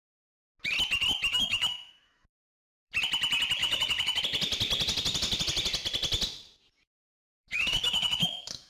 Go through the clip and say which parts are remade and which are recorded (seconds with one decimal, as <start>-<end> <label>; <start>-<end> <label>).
0.0-1.3 recorded; 1.3-2.9 remade; 2.9-3.6 recorded; 3.6-4.2 remade; 4.2-7.1 recorded; 7.1-8.7 remade